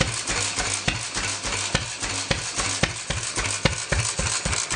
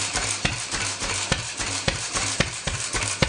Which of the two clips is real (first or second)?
first